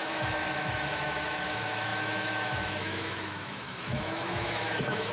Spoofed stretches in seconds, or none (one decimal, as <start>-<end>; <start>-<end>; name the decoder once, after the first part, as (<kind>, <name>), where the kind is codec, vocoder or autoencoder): 0.0-5.1 (autoencoder, DAC-VAE)